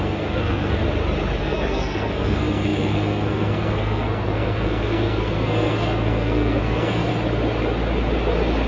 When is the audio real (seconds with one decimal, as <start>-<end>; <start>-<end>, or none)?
0.8-1.4; 7.1-8.7